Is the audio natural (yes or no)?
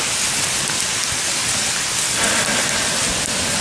yes